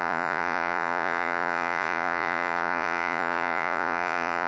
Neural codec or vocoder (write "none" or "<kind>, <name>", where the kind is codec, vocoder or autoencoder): vocoder, Vocos